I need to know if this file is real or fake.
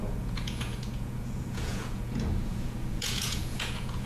fake